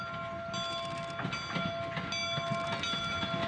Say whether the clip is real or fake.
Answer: real